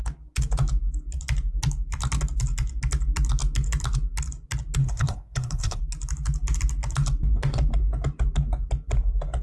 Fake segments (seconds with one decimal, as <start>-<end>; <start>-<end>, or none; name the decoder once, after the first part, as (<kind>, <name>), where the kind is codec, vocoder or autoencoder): 4.8-5.8 (codec, SNAC)